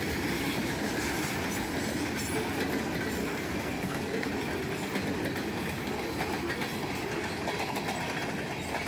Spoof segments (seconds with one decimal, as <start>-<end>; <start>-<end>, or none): 3.2-4.3